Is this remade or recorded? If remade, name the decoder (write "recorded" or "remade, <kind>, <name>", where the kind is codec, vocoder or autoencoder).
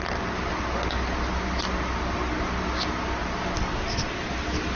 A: recorded